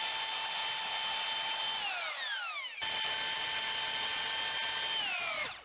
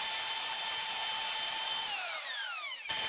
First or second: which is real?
first